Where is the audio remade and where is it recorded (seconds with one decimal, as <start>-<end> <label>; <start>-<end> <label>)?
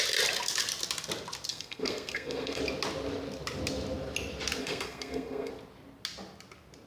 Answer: 0.0-1.5 recorded; 1.5-2.6 remade; 2.6-4.6 recorded; 4.6-5.5 remade; 5.5-6.9 recorded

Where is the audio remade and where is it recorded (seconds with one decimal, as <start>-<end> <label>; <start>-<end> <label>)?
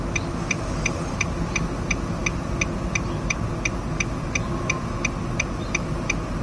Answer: 0.0-6.4 recorded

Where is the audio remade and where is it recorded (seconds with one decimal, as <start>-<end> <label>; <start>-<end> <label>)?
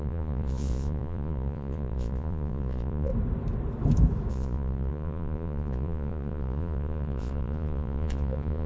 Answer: 0.0-3.1 remade; 3.1-4.3 recorded; 4.3-8.7 remade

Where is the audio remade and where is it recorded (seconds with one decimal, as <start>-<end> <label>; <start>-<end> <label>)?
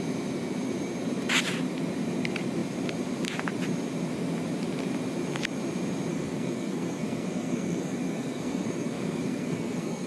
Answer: 0.0-6.1 recorded; 6.1-10.1 remade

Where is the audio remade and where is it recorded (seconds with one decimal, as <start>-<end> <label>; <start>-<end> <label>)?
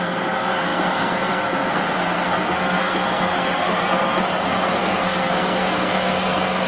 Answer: 0.0-6.7 remade